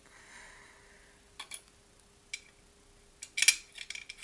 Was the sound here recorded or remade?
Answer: recorded